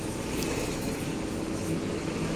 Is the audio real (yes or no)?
no